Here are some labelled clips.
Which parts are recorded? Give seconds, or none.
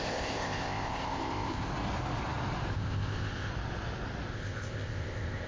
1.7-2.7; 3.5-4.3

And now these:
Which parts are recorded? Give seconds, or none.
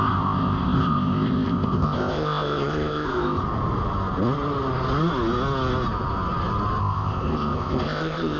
3.4-6.8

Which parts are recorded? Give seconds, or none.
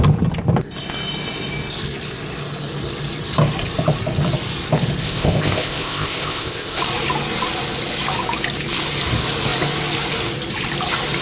0.0-5.0; 6.8-11.2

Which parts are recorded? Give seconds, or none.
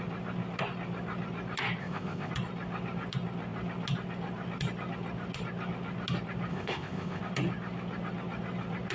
0.0-1.8; 2.3-6.5; 7.2-8.9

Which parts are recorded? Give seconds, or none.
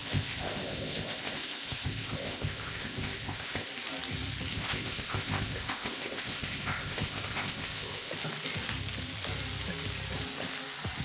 3.7-4.5; 8.1-11.0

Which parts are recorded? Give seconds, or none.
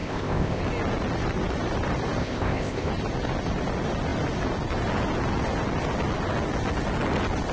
0.6-2.2; 2.9-7.5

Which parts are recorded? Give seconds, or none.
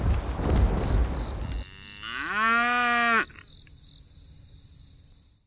0.0-5.5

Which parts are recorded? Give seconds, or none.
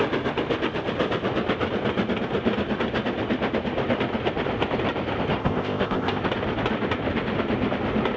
0.0-5.4; 6.2-8.2